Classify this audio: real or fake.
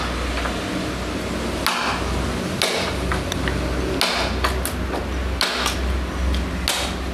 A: real